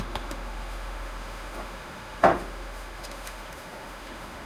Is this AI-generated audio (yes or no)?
yes